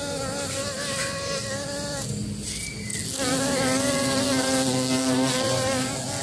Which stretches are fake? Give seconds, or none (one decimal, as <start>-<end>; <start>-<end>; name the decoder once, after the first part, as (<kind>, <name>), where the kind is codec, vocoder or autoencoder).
none